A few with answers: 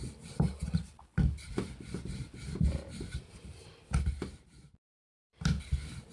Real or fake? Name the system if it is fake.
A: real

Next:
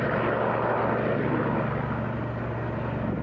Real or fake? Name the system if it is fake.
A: real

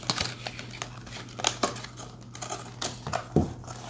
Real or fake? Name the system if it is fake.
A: real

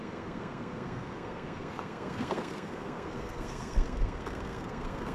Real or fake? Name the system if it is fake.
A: fake, codec, SNAC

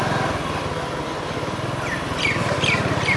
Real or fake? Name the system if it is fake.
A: real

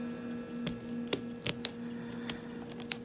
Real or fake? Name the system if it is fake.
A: real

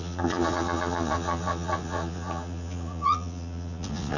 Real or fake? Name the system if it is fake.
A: fake, vocoder, Vocos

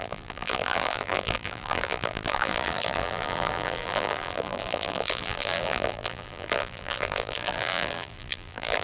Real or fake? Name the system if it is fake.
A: fake, vocoder, BigVGAN v2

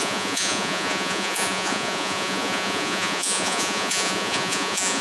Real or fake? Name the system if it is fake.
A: fake, vocoder, Vocos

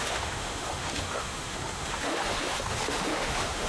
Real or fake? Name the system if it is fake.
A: fake, autoencoder, DAC-VAE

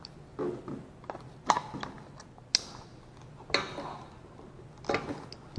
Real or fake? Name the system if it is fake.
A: real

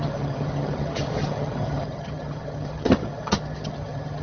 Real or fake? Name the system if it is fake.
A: fake, vocoder, HiFi-GAN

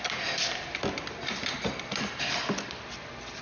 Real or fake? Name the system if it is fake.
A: real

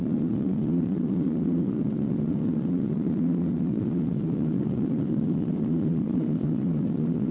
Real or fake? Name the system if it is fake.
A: fake, vocoder, Vocos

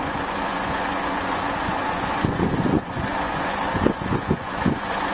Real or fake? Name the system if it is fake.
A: fake, vocoder, Vocos